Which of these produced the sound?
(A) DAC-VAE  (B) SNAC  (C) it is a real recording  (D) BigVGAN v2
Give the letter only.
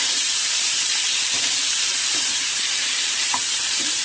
D